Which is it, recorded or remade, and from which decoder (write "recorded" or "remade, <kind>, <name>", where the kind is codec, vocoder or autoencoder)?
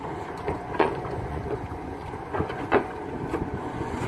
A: remade, vocoder, Vocos